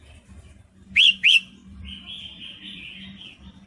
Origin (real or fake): fake